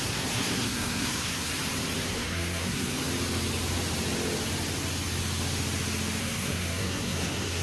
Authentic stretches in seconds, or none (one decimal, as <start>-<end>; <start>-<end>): 1.5-2.1; 2.9-6.2